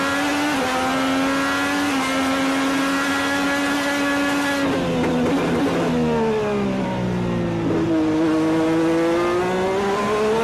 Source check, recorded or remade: recorded